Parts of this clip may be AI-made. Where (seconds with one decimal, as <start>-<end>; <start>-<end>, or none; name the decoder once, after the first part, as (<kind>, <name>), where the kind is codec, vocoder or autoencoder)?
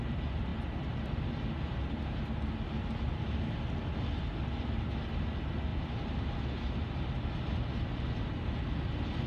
none